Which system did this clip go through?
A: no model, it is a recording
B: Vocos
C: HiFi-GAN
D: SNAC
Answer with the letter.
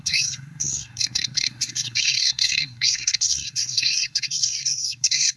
D